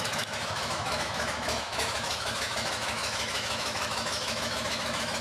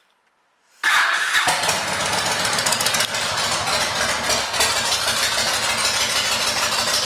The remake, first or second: first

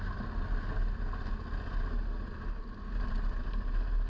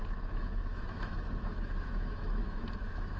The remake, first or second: second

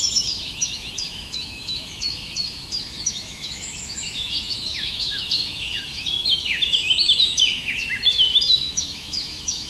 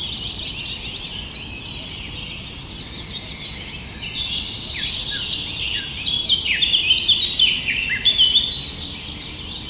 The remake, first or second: first